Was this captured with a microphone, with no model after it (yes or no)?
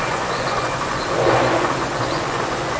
no